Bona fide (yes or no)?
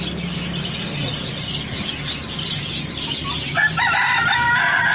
yes